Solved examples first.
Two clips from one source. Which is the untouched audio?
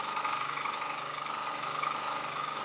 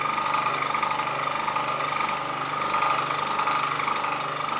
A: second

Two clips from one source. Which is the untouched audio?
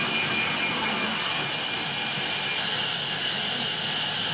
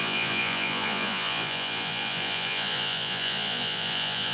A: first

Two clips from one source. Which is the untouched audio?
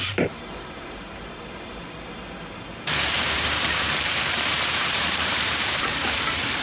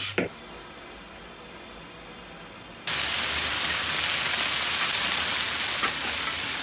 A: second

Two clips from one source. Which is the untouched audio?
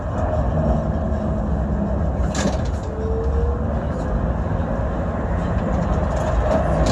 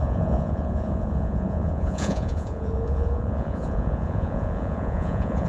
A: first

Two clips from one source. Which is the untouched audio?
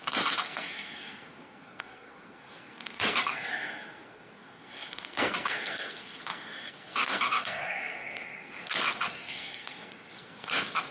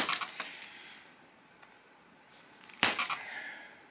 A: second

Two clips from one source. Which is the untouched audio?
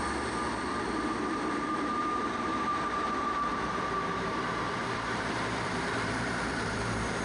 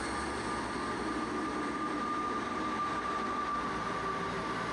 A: second